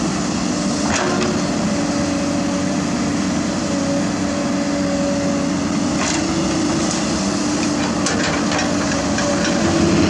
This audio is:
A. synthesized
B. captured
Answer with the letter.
B